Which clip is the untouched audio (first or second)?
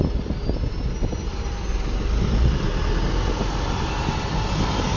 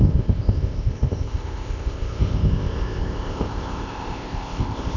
first